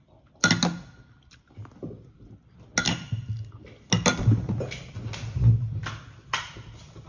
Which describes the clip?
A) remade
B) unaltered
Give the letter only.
B